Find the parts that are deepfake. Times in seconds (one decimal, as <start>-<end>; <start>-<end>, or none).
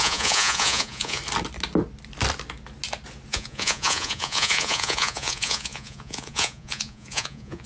0.0-1.2; 3.3-7.7